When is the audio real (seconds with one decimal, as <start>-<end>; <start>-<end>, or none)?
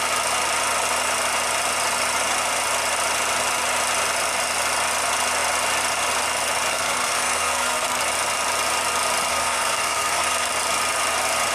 0.0-6.7; 8.0-9.3; 10.5-11.5